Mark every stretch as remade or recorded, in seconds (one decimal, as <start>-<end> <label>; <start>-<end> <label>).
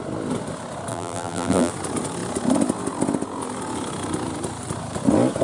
0.0-0.9 recorded; 0.9-1.7 remade; 1.7-5.4 recorded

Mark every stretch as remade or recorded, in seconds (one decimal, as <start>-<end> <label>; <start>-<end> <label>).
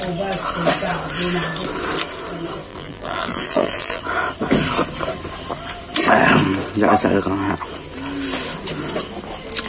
0.0-2.7 recorded; 2.7-4.0 remade; 4.0-9.7 recorded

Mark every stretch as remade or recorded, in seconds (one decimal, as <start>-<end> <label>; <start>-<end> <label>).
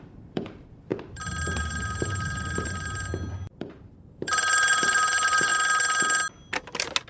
0.0-0.9 remade; 0.9-1.6 recorded; 1.6-5.5 remade; 5.5-7.1 recorded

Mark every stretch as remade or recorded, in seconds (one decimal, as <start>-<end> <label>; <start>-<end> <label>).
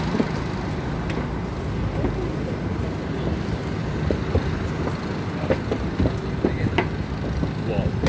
0.0-8.1 recorded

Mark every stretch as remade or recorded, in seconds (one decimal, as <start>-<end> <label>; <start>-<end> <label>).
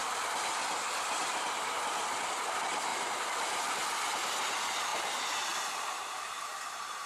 0.0-2.9 recorded; 2.9-3.9 remade; 3.9-4.9 recorded; 4.9-6.3 remade; 6.3-7.1 recorded